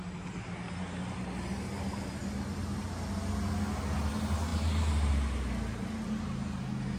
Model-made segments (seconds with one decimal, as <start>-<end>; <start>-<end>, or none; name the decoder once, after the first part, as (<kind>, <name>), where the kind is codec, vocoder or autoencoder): none